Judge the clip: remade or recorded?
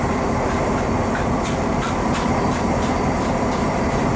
remade